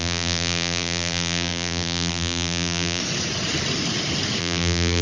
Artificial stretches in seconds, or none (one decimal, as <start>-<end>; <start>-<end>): 0.0-3.0; 4.4-5.0